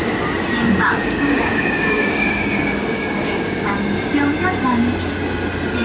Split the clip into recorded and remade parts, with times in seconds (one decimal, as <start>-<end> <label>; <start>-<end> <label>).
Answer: 0.0-1.0 recorded; 1.0-3.7 remade; 3.7-5.8 recorded